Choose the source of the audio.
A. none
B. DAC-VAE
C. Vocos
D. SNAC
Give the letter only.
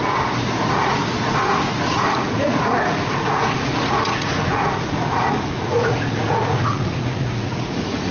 C